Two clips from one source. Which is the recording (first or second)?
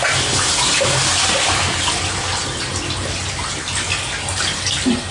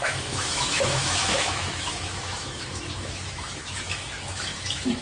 first